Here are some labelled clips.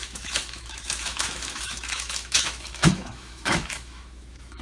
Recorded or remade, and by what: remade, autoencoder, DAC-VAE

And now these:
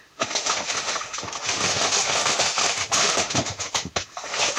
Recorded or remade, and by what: remade, autoencoder, DAC-VAE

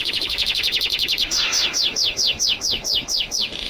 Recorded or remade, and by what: remade, autoencoder, DAC-VAE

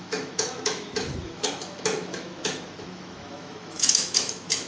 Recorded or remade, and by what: remade, autoencoder, DAC-VAE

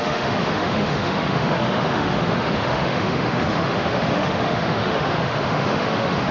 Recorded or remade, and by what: remade, autoencoder, DAC-VAE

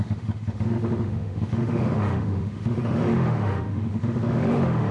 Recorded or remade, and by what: remade, autoencoder, DAC-VAE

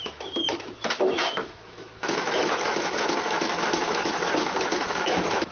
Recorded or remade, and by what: remade, autoencoder, DAC-VAE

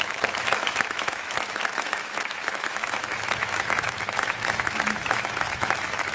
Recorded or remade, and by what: remade, autoencoder, DAC-VAE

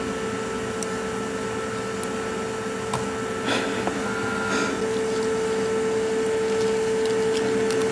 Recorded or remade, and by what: recorded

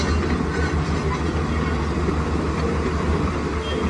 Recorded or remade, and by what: recorded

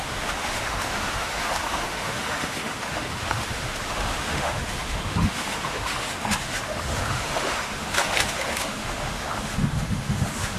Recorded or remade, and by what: remade, autoencoder, DAC-VAE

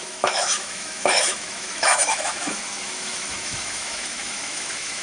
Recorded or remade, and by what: remade, autoencoder, DAC-VAE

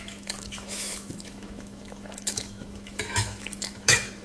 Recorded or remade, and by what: remade, autoencoder, DAC-VAE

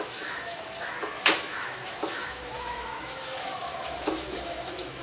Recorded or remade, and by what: remade, autoencoder, DAC-VAE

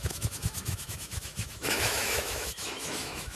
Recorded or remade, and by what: remade, autoencoder, DAC-VAE